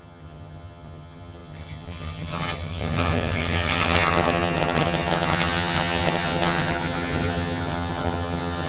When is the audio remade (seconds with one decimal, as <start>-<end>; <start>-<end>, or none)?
0.0-8.7